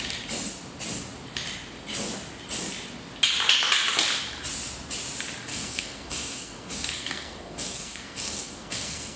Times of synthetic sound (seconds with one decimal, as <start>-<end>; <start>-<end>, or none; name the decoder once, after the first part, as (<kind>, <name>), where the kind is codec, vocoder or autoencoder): 5.5-9.2 (codec, SNAC)